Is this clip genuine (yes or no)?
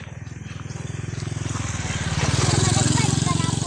yes